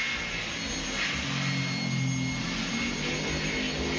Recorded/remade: recorded